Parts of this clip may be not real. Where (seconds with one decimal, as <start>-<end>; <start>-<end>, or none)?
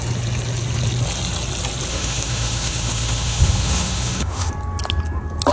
1.9-4.5